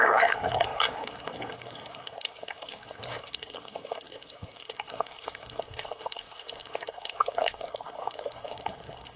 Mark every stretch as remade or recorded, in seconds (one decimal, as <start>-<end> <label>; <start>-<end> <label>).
0.0-9.2 remade